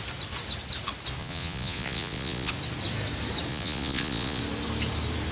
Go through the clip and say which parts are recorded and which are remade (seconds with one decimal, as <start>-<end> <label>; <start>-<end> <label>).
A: 0.0-1.2 recorded; 1.2-2.5 remade; 2.5-3.5 recorded; 3.5-4.4 remade; 4.4-5.3 recorded